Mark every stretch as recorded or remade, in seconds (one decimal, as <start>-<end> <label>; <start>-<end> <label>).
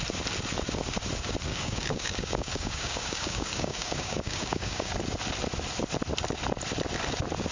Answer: 0.0-1.5 recorded; 1.5-4.9 remade; 4.9-7.5 recorded